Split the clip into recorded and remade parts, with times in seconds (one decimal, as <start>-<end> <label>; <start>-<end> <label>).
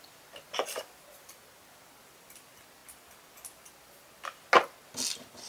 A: 0.0-5.5 recorded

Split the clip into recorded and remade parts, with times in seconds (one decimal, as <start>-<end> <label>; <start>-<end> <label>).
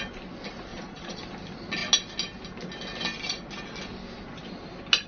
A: 0.0-0.7 recorded; 0.7-1.2 remade; 1.2-5.1 recorded